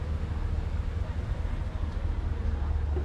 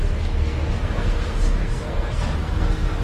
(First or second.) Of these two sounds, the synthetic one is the second